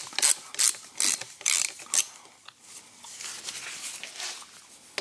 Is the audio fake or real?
real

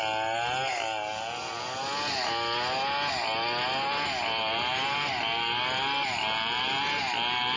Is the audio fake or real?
real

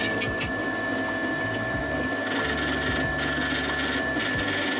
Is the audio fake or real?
real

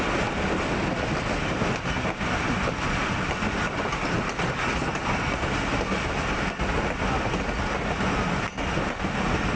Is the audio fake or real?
real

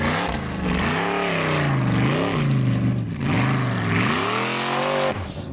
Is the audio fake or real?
real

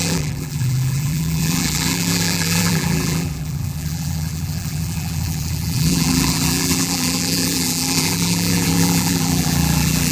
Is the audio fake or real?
fake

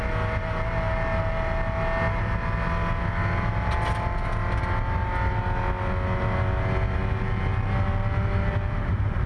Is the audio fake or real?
real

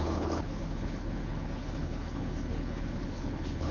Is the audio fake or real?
fake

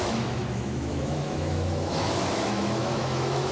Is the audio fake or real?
fake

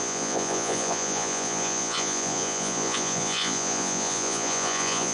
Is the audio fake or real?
fake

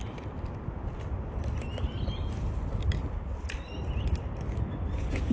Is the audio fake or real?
real